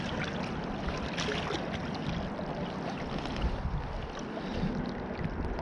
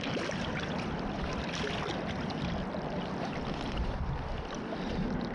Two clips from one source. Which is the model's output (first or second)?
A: second